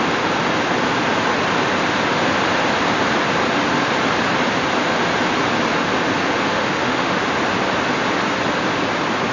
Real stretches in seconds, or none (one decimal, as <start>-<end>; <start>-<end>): 0.0-6.5; 7.2-9.3